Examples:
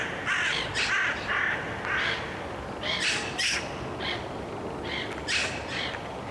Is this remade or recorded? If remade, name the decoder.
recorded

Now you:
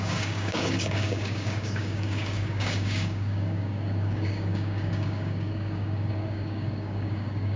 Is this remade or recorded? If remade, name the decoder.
remade, codec, DAC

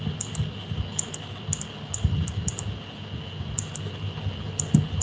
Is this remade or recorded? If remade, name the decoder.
recorded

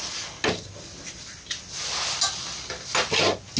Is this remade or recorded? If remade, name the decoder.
recorded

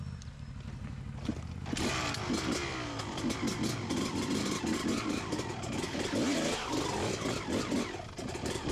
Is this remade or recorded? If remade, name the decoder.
recorded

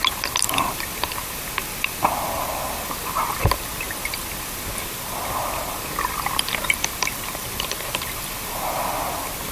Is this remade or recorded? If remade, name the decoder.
recorded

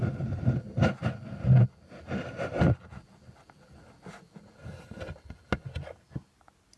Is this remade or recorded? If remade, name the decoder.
recorded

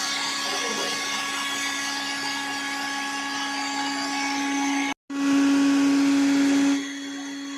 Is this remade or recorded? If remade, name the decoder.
recorded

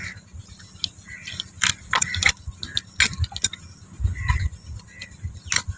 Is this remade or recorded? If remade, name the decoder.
recorded